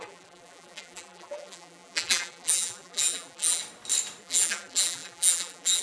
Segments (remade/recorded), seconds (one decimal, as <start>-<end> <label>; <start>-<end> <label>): 0.0-3.6 remade; 3.6-4.2 recorded; 4.2-5.8 remade